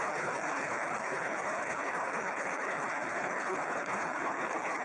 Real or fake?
fake